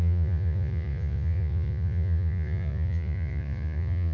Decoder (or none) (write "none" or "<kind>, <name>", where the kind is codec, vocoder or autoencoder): vocoder, Vocos